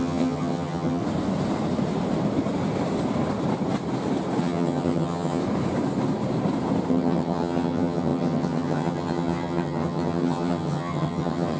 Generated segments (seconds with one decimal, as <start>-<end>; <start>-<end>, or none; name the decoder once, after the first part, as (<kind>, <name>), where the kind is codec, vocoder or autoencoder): 0.0-1.0 (vocoder, HiFi-GAN); 4.4-5.4; 6.9-11.6